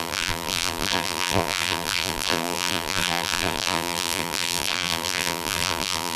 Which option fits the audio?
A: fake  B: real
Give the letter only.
A